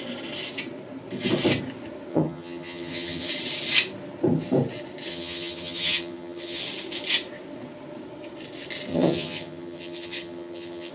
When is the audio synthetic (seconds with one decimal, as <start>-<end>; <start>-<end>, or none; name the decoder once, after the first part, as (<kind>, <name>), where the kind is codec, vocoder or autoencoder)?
2.1-3.3 (vocoder, HiFi-GAN); 5.1-6.6; 8.9-10.9